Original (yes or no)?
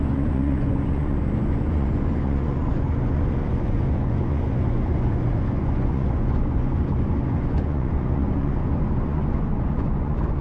no